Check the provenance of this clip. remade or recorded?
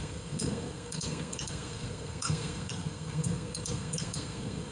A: remade